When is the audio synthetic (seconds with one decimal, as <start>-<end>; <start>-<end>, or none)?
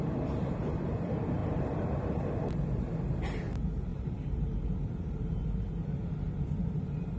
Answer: 1.4-2.9; 3.9-7.2